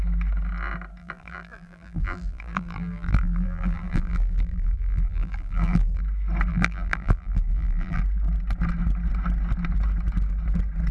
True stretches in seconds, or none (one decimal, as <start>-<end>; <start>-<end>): 0.0-1.0; 6.0-6.5; 8.0-10.9